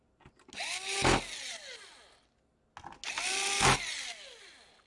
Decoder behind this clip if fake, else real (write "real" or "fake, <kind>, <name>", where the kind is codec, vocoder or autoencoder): real